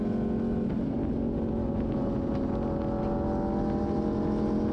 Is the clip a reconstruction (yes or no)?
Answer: no